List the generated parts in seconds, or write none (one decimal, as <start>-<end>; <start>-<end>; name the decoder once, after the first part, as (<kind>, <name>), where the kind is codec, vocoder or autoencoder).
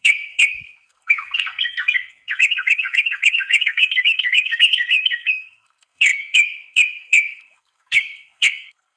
0.0-9.0 (codec, SNAC)